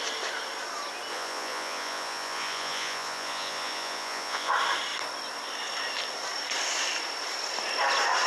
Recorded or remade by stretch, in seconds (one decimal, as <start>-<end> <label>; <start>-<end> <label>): 0.0-1.1 recorded; 1.1-4.5 remade; 4.5-8.3 recorded